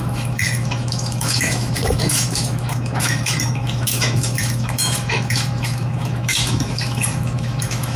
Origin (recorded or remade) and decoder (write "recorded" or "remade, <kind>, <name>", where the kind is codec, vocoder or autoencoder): remade, autoencoder, DAC-VAE